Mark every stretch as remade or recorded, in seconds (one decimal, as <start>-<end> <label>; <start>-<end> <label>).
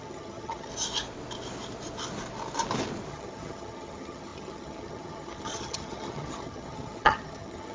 0.0-0.7 remade; 0.7-3.1 recorded; 3.1-7.7 remade